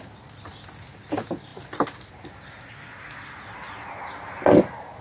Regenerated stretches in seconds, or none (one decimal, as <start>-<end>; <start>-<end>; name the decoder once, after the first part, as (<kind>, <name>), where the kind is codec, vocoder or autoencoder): none